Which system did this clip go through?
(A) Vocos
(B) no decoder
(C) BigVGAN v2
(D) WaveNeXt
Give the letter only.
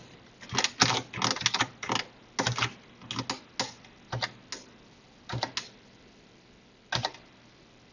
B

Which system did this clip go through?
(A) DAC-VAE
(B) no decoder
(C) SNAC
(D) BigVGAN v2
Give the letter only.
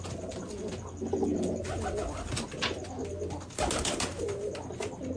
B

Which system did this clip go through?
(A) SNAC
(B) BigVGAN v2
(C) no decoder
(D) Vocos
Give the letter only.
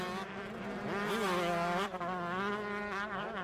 C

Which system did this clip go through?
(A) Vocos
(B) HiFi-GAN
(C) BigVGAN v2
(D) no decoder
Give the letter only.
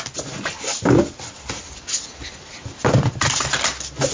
D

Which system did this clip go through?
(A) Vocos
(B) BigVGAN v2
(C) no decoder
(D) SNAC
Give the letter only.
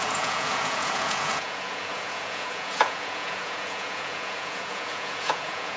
A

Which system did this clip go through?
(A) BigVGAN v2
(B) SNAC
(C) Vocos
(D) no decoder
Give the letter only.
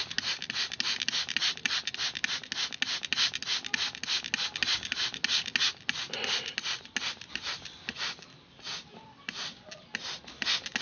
D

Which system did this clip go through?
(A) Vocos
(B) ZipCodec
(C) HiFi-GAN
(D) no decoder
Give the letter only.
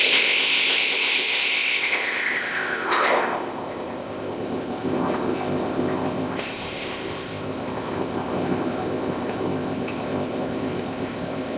B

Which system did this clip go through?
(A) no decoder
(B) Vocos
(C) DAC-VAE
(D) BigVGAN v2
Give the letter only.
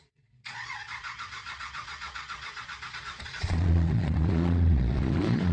B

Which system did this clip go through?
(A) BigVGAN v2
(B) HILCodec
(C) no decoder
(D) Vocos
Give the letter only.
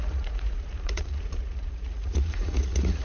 D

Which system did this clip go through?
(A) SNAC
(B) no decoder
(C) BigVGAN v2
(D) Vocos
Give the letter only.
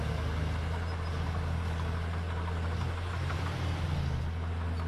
B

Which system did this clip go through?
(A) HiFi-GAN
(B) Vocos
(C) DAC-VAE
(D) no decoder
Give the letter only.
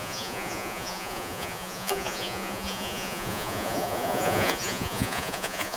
B